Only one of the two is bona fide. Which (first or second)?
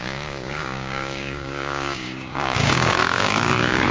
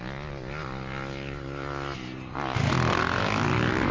second